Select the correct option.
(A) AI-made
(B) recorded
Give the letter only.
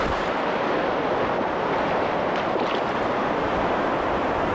B